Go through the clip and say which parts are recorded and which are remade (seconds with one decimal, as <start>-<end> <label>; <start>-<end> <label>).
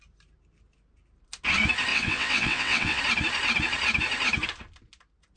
0.0-1.9 recorded; 1.9-3.0 remade; 3.0-5.4 recorded